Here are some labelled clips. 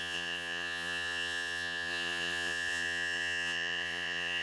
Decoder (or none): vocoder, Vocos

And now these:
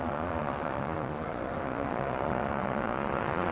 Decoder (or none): vocoder, Vocos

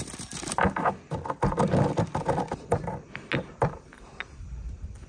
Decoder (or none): none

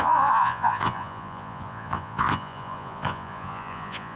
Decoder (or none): vocoder, Vocos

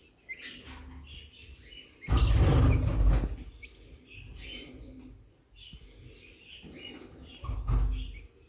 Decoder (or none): none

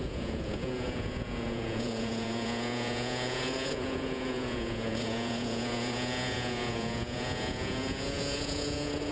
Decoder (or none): vocoder, Vocos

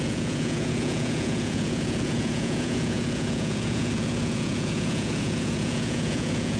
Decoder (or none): vocoder, Vocos